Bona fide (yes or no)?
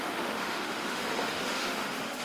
no